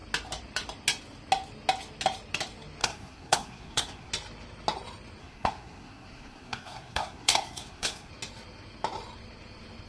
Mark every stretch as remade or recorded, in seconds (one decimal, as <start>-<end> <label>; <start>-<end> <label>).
0.0-2.8 recorded; 2.8-4.1 remade; 4.1-5.2 recorded; 5.2-8.1 remade; 8.1-9.9 recorded